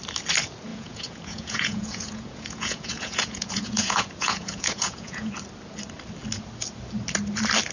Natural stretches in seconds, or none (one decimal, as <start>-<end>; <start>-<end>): 0.0-0.7; 5.3-7.7

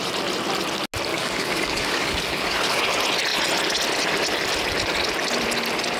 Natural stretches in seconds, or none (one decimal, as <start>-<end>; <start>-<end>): 0.0-1.1; 2.8-6.0

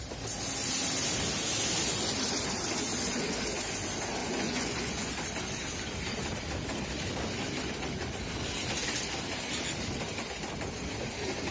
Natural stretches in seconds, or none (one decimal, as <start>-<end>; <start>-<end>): 0.0-4.2; 5.1-11.5